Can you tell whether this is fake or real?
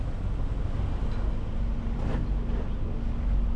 real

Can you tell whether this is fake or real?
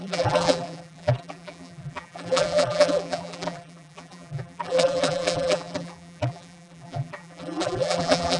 fake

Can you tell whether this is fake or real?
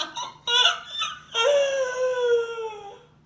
real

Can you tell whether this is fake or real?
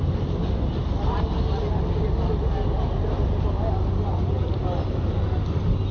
real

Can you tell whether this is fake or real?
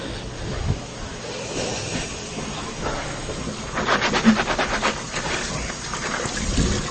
real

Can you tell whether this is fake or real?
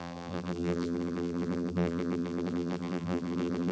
fake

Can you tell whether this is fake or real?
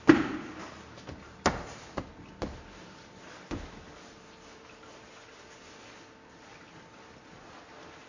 real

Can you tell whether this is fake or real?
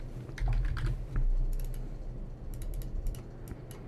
real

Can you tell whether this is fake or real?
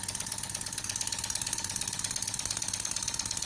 real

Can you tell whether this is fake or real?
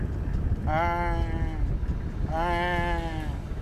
real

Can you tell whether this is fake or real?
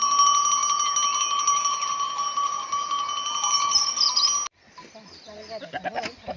real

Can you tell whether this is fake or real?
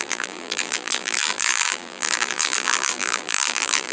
fake